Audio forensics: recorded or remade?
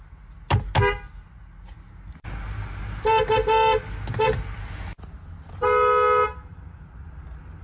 recorded